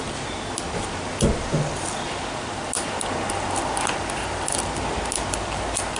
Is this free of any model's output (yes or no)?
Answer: yes